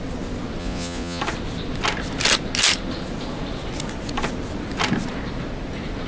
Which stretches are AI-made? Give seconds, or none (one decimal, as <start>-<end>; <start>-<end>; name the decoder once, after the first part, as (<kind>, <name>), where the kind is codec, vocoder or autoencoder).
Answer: 0.6-1.2 (vocoder, Vocos)

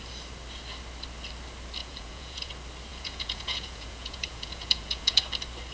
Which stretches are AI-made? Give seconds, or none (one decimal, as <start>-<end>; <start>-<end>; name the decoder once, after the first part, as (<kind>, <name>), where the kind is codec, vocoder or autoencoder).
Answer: 1.8-2.5 (vocoder, Vocos); 2.9-5.2

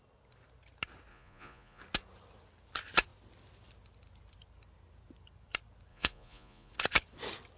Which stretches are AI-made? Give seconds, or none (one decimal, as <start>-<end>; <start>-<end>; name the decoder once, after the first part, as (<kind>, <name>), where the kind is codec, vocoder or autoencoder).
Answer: 1.1-1.8 (vocoder, Vocos); 5.9-6.7

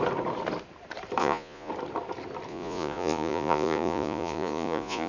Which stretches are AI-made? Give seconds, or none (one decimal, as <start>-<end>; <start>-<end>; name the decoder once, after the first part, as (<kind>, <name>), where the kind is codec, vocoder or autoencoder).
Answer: 1.2-1.7 (vocoder, Vocos); 2.5-5.1

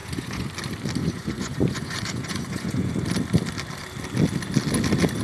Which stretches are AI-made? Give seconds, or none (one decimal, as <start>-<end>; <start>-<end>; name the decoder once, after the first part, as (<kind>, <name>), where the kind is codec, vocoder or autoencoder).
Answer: 0.0-0.5 (vocoder, Vocos); 1.0-2.9

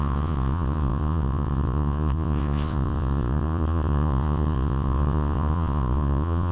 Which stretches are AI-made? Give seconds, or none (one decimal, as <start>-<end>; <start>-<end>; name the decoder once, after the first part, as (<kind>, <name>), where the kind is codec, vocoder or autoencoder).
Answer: 0.0-6.5 (vocoder, Vocos)

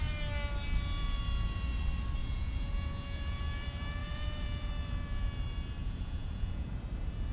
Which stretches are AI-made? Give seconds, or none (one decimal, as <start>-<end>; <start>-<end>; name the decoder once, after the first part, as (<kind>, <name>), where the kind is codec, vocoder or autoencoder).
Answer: 2.2-3.4 (vocoder, Vocos); 4.0-4.7; 5.8-6.7

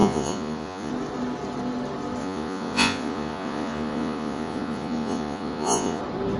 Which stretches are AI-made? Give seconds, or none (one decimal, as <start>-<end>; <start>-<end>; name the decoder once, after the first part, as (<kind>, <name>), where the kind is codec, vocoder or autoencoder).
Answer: 0.0-0.9 (vocoder, Vocos); 2.2-6.0